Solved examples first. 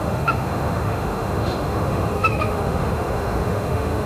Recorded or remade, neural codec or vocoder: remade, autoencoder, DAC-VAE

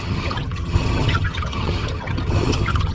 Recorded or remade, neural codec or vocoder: remade, vocoder, HiFi-GAN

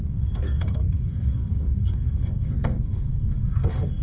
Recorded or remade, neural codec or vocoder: remade, codec, SNAC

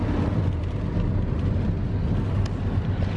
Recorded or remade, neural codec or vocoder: recorded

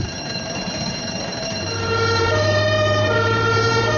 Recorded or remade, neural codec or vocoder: remade, vocoder, BigVGAN v2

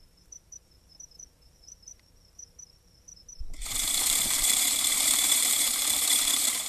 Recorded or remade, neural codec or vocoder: remade, vocoder, BigVGAN v2